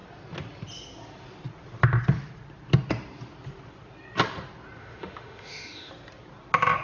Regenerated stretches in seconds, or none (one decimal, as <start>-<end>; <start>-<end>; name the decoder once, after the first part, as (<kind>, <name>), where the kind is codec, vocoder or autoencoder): 4.8-5.9 (autoencoder, DAC-VAE)